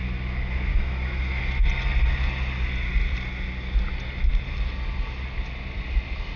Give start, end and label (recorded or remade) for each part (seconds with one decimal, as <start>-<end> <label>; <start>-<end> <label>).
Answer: 0.0-0.7 recorded; 0.7-1.4 remade; 1.4-6.4 recorded